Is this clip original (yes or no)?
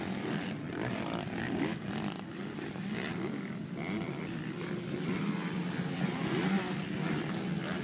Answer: yes